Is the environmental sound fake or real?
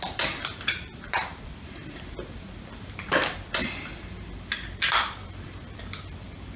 fake